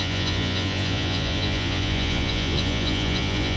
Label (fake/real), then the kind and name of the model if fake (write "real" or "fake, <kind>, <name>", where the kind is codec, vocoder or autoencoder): fake, vocoder, Vocos